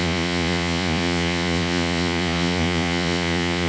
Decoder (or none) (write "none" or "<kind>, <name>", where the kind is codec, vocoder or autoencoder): vocoder, Vocos